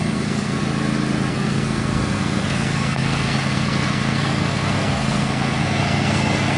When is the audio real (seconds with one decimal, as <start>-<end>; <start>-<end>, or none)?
0.6-1.3